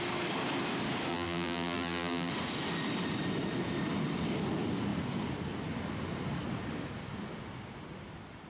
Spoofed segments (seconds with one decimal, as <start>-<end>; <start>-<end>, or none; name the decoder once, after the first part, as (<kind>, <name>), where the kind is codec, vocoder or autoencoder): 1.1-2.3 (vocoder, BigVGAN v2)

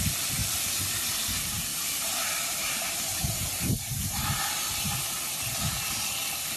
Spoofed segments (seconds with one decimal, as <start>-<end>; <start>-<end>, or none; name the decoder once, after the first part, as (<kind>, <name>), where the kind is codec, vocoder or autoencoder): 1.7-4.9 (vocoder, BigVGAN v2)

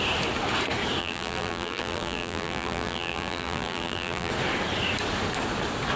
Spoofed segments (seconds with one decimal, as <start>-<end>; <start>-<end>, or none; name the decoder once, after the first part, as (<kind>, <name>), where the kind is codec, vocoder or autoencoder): 1.0-4.3 (vocoder, BigVGAN v2)

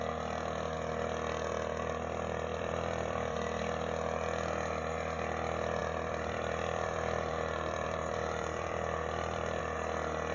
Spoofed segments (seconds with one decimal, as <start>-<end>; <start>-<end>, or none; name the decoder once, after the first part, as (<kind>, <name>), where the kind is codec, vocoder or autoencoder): 2.5-3.6 (vocoder, BigVGAN v2); 5.8-9.6

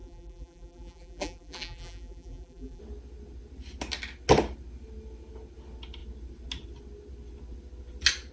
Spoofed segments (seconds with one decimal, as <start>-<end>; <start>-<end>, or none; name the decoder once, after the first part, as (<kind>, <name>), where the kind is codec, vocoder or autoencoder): 0.0-2.8 (vocoder, BigVGAN v2)

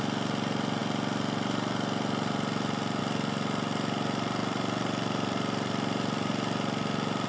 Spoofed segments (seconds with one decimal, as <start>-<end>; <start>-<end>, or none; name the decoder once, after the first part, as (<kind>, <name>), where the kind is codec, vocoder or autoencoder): 4.4-6.3 (vocoder, BigVGAN v2)

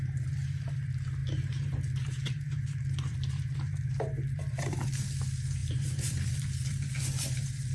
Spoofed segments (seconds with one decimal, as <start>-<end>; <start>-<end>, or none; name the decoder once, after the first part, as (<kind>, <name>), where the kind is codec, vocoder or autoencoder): 0.0-7.7 (vocoder, BigVGAN v2)